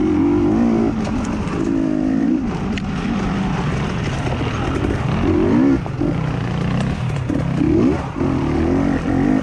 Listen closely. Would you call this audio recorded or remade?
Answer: recorded